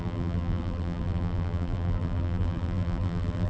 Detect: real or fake fake